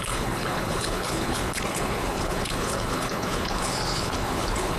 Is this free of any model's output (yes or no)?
no